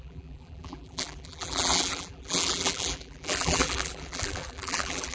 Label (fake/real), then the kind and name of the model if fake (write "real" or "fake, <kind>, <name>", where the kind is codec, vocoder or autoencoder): fake, vocoder, BigVGAN v2